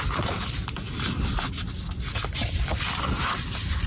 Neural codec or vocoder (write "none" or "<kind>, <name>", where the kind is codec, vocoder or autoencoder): none